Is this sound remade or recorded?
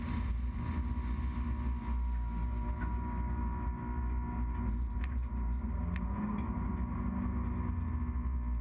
recorded